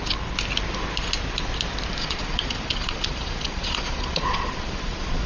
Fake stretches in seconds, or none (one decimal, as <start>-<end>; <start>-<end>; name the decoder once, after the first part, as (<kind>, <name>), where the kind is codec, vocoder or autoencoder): 2.0-5.3 (vocoder, Vocos)